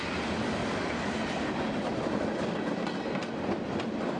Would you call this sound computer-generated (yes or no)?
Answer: no